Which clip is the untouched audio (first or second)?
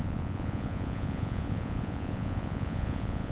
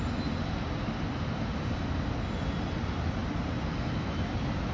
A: second